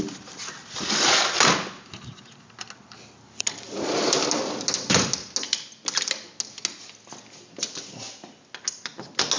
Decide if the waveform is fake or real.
real